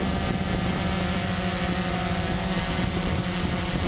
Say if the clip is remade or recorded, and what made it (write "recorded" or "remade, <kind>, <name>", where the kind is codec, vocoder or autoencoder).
recorded